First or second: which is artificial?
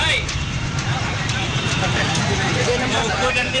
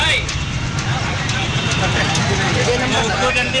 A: first